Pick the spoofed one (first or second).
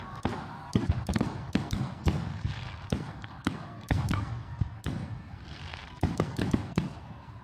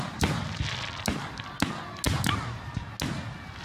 first